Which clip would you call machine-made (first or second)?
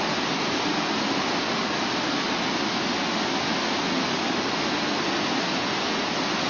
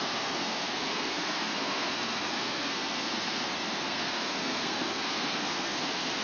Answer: second